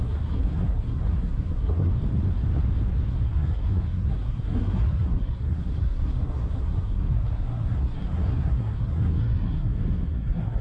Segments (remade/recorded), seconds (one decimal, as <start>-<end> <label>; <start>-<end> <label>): 0.0-1.9 remade; 1.9-3.1 recorded; 3.1-10.6 remade

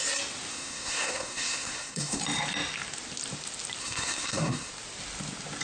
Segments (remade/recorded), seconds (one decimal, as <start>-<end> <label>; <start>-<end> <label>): 0.0-0.5 recorded; 0.5-2.2 remade; 2.2-3.8 recorded; 3.8-4.7 remade; 4.7-5.6 recorded